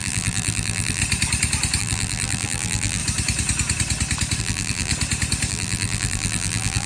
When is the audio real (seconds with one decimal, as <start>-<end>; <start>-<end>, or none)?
1.0-1.8; 3.0-4.4; 4.9-5.5